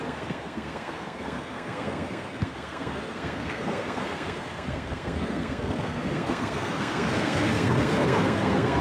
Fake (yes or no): yes